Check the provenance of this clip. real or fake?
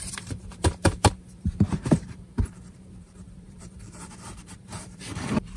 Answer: fake